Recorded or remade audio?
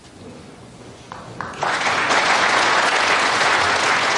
remade